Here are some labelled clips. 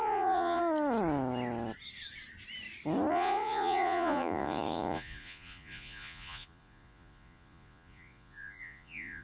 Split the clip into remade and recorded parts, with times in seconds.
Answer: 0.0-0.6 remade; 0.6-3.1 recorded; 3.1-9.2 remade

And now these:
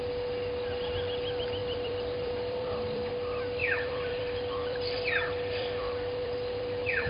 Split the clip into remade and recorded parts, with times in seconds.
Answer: 0.0-1.6 recorded; 1.6-3.1 remade; 3.1-3.6 recorded; 3.6-7.1 remade